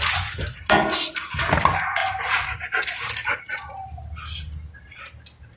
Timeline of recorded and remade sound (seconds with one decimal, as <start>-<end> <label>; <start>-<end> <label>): 0.0-5.6 recorded